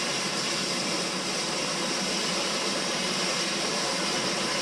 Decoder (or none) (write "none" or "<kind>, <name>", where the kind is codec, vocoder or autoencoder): vocoder, BigVGAN v2